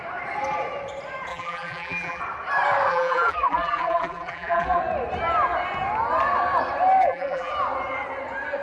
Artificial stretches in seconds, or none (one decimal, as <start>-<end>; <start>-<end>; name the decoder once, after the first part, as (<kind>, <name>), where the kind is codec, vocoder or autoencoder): 1.3-2.2 (vocoder, BigVGAN v2); 2.9-4.8; 7.0-7.5